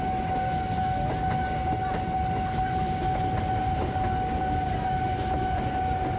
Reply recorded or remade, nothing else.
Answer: recorded